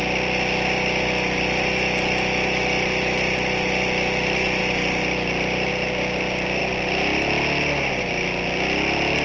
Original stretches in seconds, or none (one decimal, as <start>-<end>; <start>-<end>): 0.0-9.2